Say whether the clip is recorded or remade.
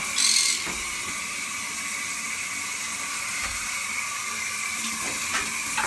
recorded